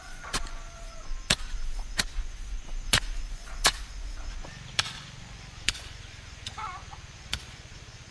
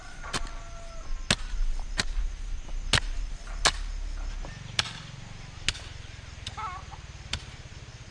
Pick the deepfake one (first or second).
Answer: first